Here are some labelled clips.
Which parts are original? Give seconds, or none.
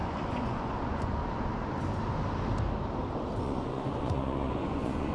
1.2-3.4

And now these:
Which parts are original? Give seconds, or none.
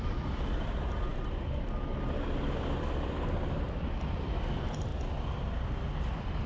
1.1-1.6; 4.9-6.0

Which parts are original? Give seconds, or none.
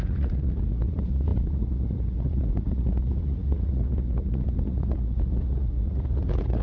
none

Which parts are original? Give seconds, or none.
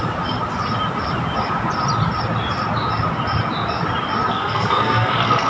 0.0-4.3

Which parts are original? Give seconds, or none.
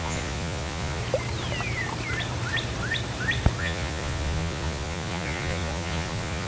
1.0-3.6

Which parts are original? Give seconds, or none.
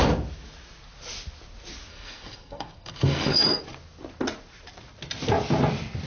0.0-1.9; 3.6-6.1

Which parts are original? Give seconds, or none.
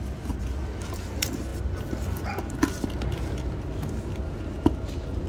0.0-5.3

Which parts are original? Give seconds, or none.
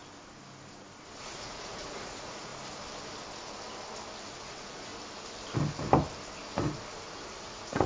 0.0-1.2; 2.5-4.3; 4.9-7.1